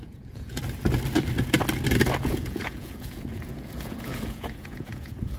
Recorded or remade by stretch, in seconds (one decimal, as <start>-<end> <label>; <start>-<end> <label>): 0.0-0.6 remade; 0.6-2.2 recorded; 2.2-5.4 remade